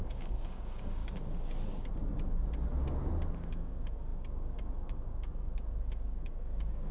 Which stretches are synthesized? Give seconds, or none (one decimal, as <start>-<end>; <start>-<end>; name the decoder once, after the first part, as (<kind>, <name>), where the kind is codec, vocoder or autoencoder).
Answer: 0.0-1.0 (codec, DAC); 3.3-6.9